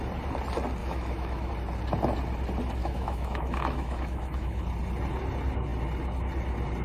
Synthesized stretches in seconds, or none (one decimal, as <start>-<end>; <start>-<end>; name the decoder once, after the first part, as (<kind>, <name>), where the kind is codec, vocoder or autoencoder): 0.8-1.5 (autoencoder, DAC-VAE); 2.8-4.6